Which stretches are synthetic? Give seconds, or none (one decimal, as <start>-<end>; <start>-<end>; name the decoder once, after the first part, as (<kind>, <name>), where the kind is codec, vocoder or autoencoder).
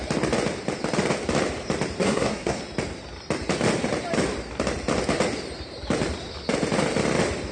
2.0-2.6 (codec, SNAC)